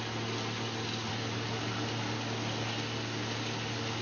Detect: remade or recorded recorded